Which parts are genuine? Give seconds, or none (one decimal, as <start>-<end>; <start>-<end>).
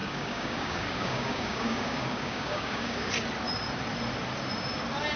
3.1-5.2